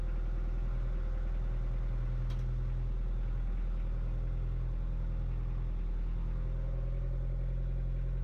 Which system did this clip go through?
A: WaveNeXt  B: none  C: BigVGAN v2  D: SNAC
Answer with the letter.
B